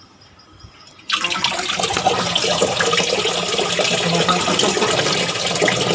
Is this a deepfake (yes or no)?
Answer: no